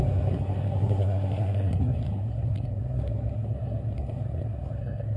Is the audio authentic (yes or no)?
no